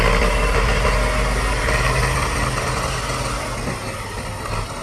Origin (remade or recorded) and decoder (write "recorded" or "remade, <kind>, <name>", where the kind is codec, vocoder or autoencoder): recorded